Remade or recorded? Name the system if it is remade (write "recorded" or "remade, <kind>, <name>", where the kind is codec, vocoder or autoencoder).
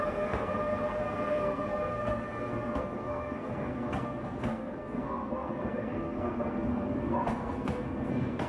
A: remade, codec, SNAC